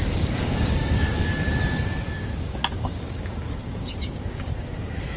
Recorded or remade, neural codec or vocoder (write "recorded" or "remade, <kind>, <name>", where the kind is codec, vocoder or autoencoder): remade, codec, DAC